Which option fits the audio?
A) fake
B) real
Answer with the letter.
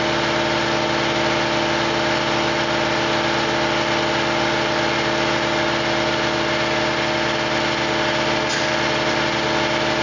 B